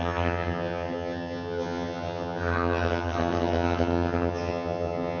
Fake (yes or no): yes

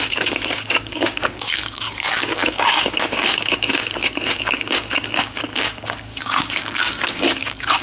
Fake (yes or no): yes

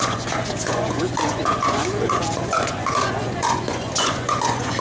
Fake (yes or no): yes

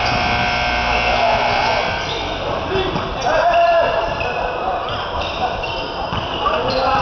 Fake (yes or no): no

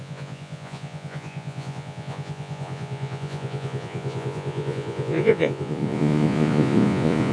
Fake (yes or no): yes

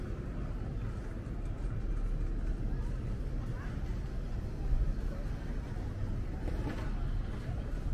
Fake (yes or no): no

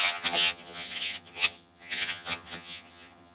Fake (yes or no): yes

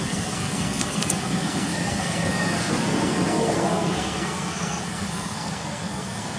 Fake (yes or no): yes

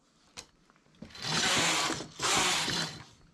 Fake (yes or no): no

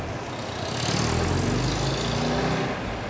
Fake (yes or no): no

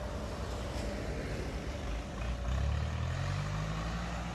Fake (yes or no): no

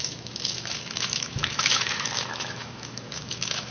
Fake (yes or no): yes